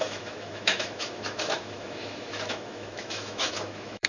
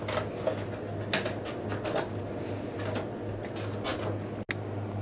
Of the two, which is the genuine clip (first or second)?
second